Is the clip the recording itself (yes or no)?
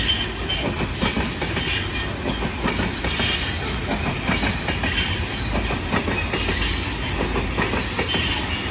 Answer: yes